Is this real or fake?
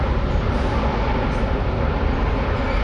real